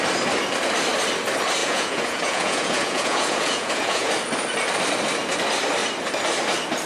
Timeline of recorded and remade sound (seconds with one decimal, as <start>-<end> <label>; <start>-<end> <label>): 0.0-1.6 recorded; 1.6-4.1 remade; 4.1-6.9 recorded